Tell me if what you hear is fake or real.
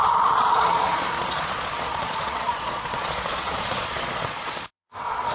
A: fake